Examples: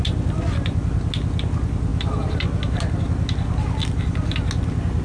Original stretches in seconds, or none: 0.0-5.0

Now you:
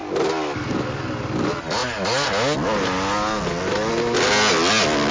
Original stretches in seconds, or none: 0.0-5.1

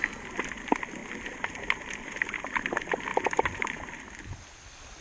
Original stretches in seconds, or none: 0.0-3.1; 3.9-5.0